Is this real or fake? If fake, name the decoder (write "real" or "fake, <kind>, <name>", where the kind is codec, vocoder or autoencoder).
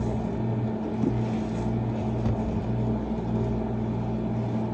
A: real